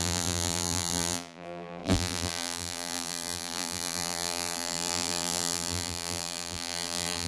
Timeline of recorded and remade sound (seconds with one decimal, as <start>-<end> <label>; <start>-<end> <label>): 0.0-7.3 remade